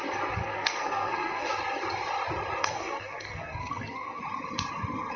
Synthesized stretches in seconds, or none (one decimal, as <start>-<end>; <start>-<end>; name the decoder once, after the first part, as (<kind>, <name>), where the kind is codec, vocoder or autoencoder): 0.4-1.5 (codec, SNAC); 2.6-4.2